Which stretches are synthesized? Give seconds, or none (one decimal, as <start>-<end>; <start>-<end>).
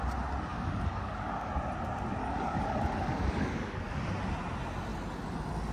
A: 0.5-1.5; 2.2-4.1